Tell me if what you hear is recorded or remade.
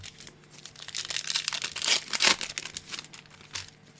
recorded